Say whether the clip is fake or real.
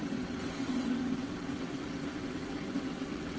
fake